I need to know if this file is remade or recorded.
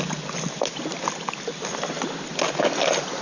recorded